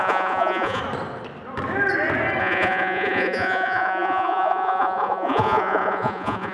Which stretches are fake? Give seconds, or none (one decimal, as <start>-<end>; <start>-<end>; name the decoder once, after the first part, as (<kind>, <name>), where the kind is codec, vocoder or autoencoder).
0.0-0.8 (vocoder, Vocos); 2.4-6.5